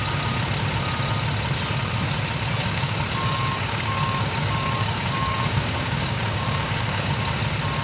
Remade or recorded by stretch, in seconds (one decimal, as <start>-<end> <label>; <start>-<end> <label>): 0.0-2.6 recorded; 2.6-7.1 remade; 7.1-7.8 recorded